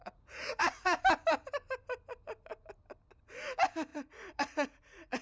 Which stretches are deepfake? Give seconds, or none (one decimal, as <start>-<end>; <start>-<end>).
0.0-1.0; 3.9-5.2